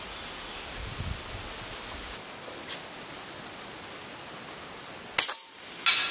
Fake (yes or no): no